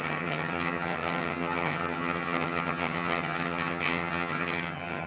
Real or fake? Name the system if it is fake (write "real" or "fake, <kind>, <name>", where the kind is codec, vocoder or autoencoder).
fake, vocoder, HiFi-GAN